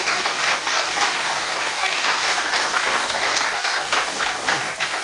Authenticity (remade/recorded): remade